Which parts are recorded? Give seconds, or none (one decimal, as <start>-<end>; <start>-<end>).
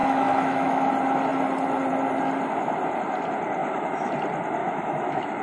0.9-3.6; 4.1-4.6